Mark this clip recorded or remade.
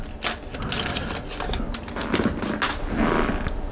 recorded